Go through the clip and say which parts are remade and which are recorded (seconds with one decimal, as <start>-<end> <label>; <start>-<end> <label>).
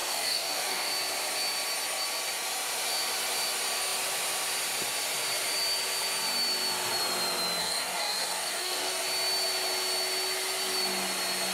0.0-0.9 remade; 0.9-7.6 recorded; 7.6-9.0 remade; 9.0-11.5 recorded